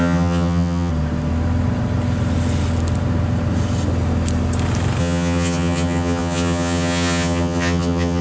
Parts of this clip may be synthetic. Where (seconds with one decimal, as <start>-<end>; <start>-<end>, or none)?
0.0-0.9; 5.0-8.2